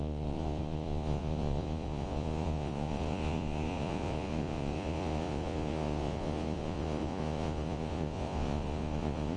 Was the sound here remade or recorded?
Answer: remade